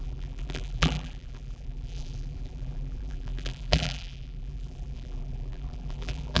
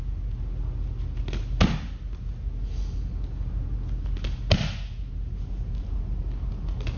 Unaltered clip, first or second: second